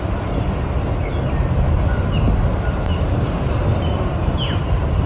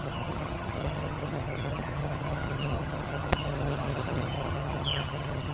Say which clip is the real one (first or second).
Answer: first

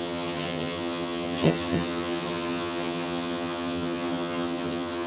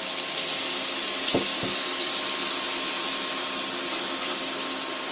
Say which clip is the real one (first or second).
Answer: second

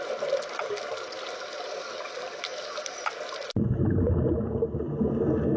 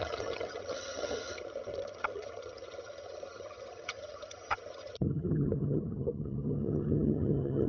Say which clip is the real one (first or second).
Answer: first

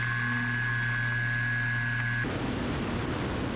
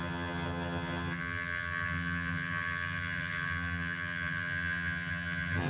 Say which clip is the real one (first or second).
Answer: first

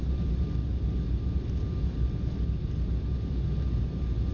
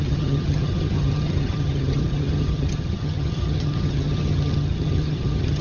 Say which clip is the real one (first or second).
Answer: first